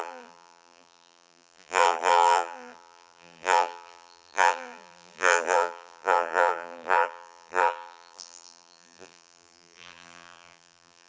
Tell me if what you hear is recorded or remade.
remade